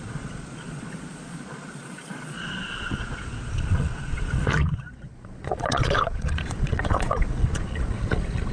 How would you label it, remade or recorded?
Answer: remade